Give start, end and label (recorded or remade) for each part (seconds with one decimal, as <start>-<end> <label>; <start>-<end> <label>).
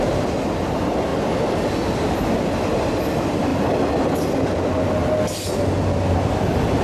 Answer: 0.0-6.8 recorded